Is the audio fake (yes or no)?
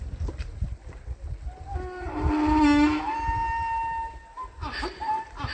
no